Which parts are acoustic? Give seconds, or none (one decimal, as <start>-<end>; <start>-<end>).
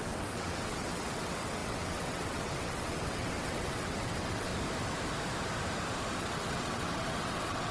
4.5-6.2